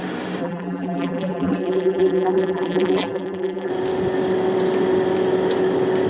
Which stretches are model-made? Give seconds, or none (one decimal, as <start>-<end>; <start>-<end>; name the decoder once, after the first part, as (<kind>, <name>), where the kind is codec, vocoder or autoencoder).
0.4-3.7 (vocoder, BigVGAN v2)